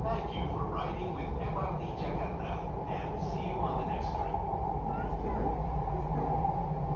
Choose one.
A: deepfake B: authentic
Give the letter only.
B